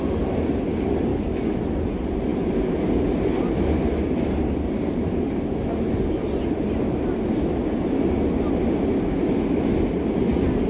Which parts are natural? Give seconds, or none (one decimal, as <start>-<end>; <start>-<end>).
0.0-1.1; 1.6-10.7